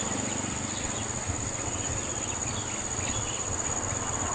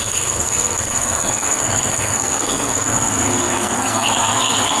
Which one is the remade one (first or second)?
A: second